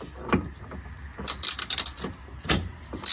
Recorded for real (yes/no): yes